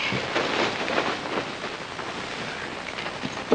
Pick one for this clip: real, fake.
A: real